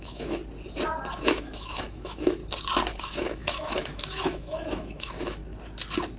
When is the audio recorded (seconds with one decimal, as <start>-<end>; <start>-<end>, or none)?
0.4-1.1; 2.4-3.0; 5.4-6.2

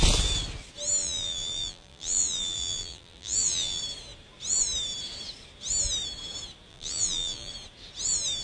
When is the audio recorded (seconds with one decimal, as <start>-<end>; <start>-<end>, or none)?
0.0-1.0; 3.8-6.7; 7.5-8.4